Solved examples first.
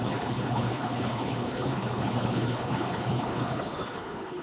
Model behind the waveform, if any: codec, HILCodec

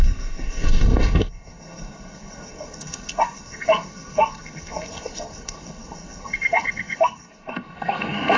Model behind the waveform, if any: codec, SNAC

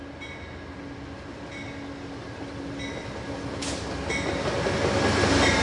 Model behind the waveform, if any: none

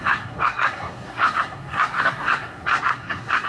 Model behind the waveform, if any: codec, SNAC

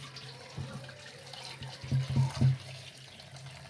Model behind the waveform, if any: none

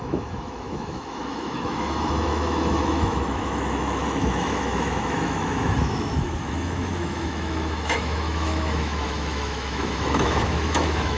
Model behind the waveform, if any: autoencoder, DAC-VAE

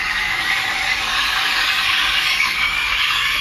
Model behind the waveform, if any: codec, DAC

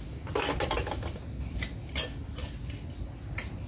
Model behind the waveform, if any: none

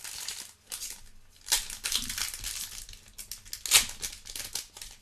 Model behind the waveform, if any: none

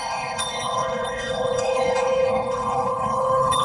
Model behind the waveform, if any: codec, HILCodec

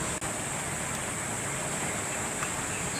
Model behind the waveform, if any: none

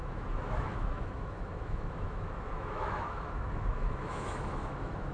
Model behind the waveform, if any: autoencoder, DAC-VAE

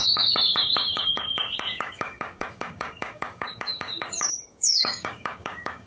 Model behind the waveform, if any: codec, DAC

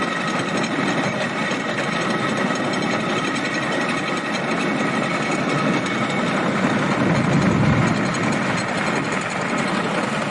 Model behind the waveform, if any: none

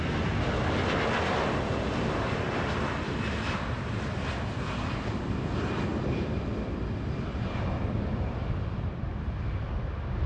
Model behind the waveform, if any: none